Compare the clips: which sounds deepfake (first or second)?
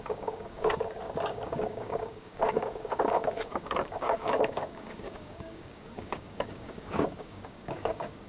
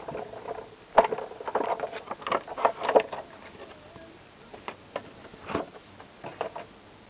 first